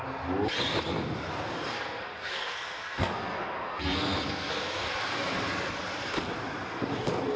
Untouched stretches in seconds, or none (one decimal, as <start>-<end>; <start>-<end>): 0.0-1.7; 4.9-7.4

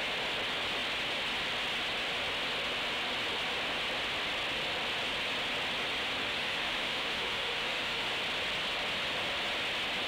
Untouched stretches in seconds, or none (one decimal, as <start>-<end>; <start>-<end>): 0.0-6.2; 8.1-10.1